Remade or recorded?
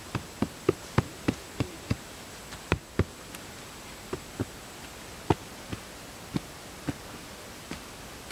recorded